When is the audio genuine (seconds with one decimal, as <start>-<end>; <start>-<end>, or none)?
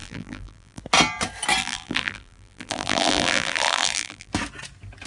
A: 0.8-1.6; 4.3-5.1